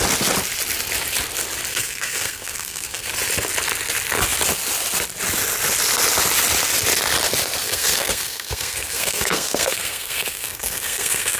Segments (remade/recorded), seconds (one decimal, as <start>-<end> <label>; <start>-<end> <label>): 0.0-1.7 recorded; 1.7-3.1 remade; 3.1-7.6 recorded; 7.6-11.4 remade